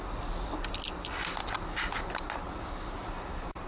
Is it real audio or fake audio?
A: real